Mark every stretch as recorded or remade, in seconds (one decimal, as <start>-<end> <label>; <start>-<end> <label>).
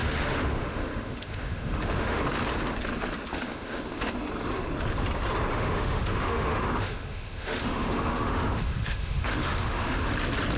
0.0-2.2 remade; 2.2-3.3 recorded; 3.3-4.1 remade; 4.1-5.5 recorded; 5.5-10.0 remade; 10.0-10.6 recorded